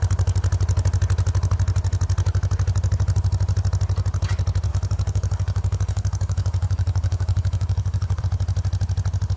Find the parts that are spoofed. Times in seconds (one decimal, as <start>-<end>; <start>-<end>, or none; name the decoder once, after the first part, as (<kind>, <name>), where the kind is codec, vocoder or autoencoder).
4.7-8.2 (codec, DAC)